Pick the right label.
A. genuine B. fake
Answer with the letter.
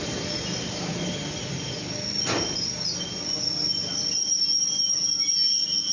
A